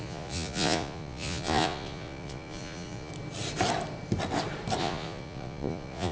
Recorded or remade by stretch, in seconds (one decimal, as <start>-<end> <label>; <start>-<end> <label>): 0.0-3.1 remade; 3.1-4.8 recorded; 4.8-6.1 remade